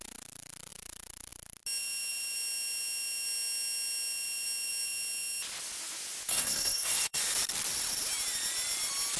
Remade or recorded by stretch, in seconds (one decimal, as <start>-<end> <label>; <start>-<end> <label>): 0.0-6.3 recorded; 6.3-7.2 remade; 7.2-9.2 recorded